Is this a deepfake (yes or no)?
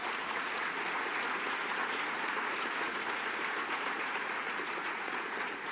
yes